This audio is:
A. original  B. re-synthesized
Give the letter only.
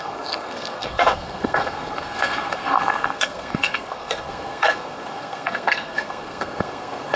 B